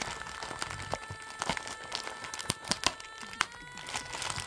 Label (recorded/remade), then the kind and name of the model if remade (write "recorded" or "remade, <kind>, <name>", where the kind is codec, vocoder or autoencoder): recorded